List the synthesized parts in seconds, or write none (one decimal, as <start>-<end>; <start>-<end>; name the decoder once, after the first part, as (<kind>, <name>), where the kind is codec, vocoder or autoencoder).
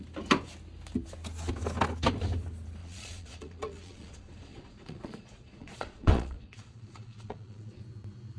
2.8-7.8 (vocoder, Vocos)